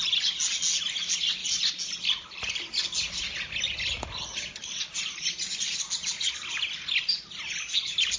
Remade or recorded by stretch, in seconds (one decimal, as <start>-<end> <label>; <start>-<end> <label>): 0.0-8.2 recorded